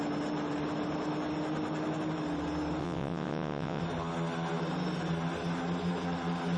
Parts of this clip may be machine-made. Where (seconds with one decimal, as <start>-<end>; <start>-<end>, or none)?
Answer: 2.8-3.8